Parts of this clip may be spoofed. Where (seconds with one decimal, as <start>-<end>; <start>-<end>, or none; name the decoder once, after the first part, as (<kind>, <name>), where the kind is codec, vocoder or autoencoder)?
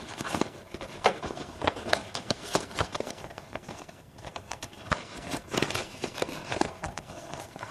0.0-7.7 (codec, SNAC)